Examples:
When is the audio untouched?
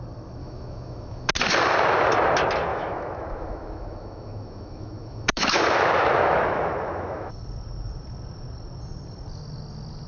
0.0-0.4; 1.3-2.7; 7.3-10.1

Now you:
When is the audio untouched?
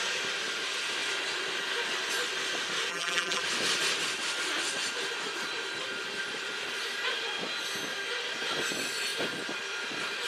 0.0-2.9; 3.4-10.3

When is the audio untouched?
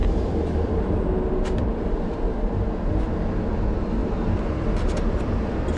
1.8-5.8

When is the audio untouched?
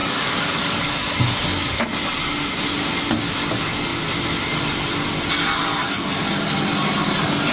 1.8-7.5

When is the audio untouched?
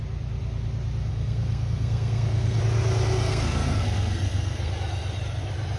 0.0-1.1; 2.6-3.3; 4.7-5.8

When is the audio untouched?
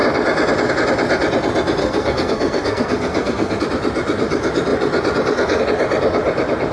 0.0-1.8; 3.6-6.7